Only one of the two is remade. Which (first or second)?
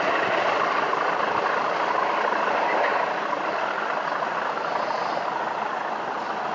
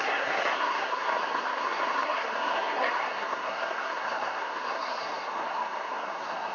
second